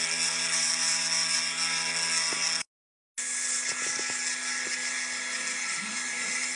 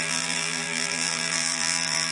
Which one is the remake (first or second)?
second